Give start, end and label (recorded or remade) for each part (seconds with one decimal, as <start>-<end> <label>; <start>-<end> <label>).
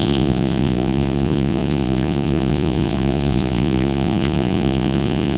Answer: 0.0-5.4 remade